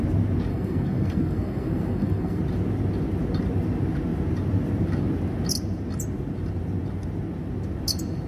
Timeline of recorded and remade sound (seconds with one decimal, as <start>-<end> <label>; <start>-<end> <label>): 0.0-0.5 recorded; 0.5-2.4 remade; 2.4-8.3 recorded

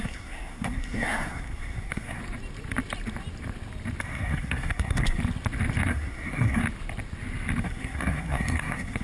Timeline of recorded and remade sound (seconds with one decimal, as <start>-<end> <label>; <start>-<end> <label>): 0.0-2.2 remade; 2.2-4.0 recorded; 4.0-5.2 remade; 5.2-5.9 recorded; 5.9-6.6 remade; 6.6-7.6 recorded; 7.6-9.0 remade

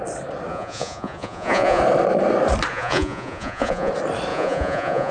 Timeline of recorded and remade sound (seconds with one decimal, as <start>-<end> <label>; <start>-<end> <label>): 0.0-0.5 recorded; 0.5-1.8 remade; 1.8-2.7 recorded; 2.7-3.9 remade; 3.9-4.3 recorded; 4.3-5.1 remade

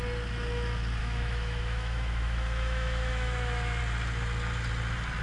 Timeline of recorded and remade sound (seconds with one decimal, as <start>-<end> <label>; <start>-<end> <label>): 0.0-1.0 recorded; 1.0-3.8 remade; 3.8-5.2 recorded

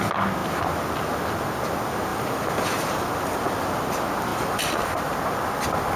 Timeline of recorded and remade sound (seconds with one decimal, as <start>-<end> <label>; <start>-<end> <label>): 0.0-2.1 recorded; 2.1-3.8 remade; 3.8-4.3 recorded; 4.3-5.0 remade; 5.0-6.0 recorded

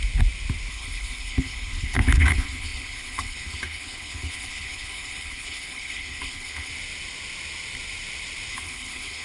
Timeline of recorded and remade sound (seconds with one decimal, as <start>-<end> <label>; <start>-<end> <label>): 0.0-0.7 recorded; 0.7-6.7 remade; 6.7-8.5 recorded; 8.5-9.2 remade

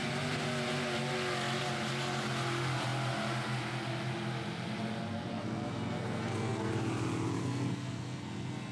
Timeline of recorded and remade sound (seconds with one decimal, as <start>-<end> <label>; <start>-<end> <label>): 0.0-5.3 recorded; 5.3-6.7 remade; 6.7-7.4 recorded; 7.4-8.7 remade

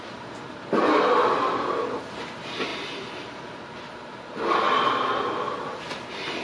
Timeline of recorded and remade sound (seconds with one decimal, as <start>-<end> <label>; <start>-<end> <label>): 0.0-6.4 recorded